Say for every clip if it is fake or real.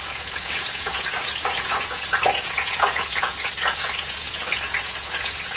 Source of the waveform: fake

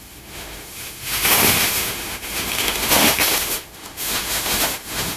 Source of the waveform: fake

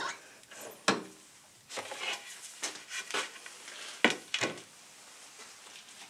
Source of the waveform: real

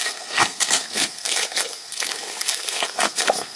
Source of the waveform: fake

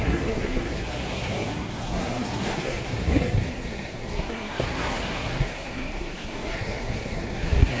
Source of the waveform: fake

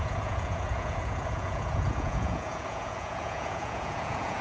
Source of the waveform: fake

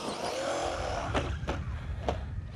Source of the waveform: real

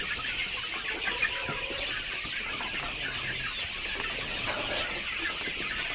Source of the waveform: real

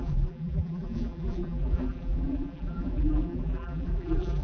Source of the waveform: fake